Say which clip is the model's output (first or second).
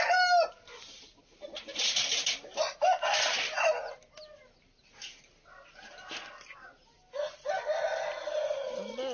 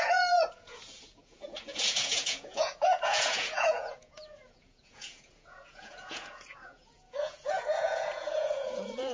second